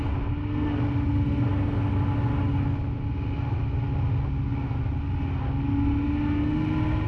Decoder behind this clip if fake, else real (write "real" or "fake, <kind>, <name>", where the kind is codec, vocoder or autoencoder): real